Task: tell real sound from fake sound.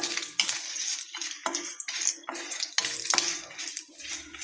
real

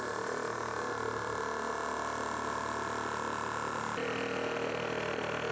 real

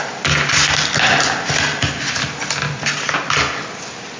real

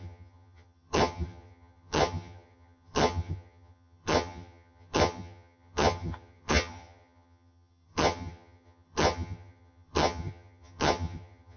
fake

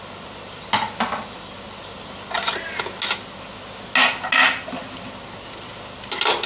real